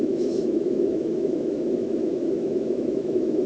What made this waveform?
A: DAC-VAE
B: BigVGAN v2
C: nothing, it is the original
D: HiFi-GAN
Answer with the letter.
A